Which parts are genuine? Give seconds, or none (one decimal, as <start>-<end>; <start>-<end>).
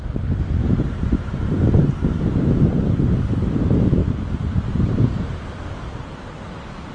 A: 0.0-0.6; 3.2-4.0; 6.3-6.9